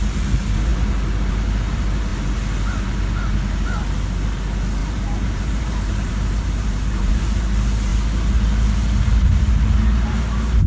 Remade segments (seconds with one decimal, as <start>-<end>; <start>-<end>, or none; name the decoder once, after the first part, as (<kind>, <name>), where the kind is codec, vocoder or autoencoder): 4.8-7.1 (vocoder, BigVGAN v2)